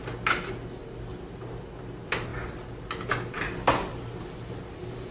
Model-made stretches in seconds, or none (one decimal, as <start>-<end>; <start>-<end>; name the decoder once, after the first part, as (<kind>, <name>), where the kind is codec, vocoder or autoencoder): none